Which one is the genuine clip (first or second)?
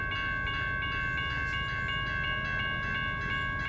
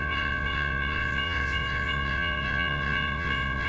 first